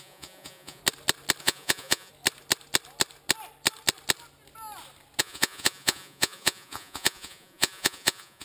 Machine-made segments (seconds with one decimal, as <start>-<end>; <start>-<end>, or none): 0.0-0.8; 1.4-2.1; 5.2-8.4